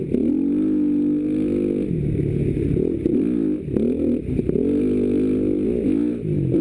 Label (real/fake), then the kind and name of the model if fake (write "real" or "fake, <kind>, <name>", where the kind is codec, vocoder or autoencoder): real